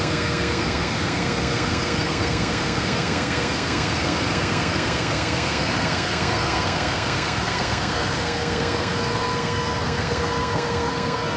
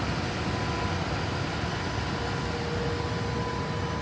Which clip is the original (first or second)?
second